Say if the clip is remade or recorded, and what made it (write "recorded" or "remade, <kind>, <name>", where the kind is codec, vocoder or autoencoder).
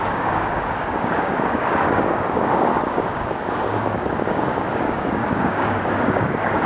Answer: remade, codec, DAC